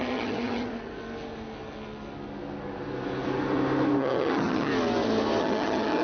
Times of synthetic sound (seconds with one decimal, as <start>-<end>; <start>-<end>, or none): 0.0-0.7; 4.0-4.7; 5.4-6.0